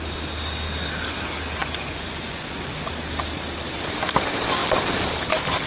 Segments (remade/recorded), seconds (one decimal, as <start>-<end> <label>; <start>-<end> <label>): 0.0-1.6 recorded; 1.6-2.9 remade; 2.9-5.7 recorded

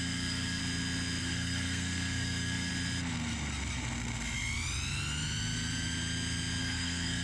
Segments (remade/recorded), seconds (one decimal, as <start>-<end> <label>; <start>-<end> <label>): 0.0-0.6 remade; 0.6-1.2 recorded; 1.2-2.7 remade; 2.7-6.6 recorded; 6.6-7.2 remade